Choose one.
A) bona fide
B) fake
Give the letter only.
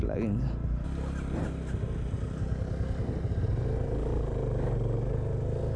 A